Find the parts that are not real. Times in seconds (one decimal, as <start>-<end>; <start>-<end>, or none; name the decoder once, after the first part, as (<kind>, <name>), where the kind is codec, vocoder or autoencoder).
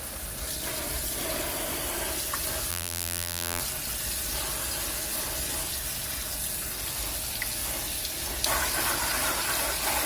2.7-3.6 (vocoder, BigVGAN v2)